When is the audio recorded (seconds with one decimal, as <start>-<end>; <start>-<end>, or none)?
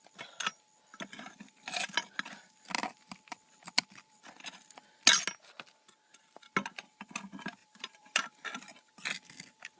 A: 0.0-7.6; 8.5-9.8